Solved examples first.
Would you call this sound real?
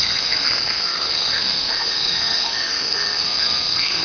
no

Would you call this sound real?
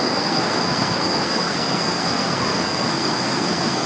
no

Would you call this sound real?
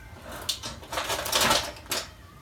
yes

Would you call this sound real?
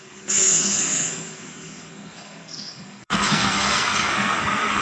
no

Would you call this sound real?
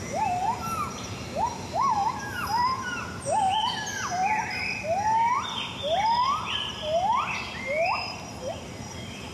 yes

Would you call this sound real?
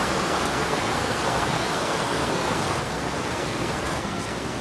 no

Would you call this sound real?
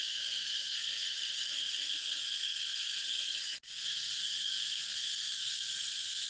no